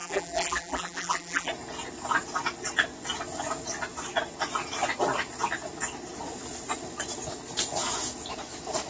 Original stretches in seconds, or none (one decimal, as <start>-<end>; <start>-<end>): 1.5-8.9